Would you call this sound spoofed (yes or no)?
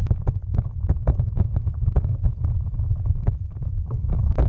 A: no